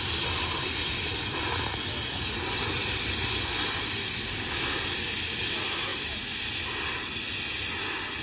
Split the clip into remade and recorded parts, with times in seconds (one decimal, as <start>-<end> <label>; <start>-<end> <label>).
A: 0.0-8.2 recorded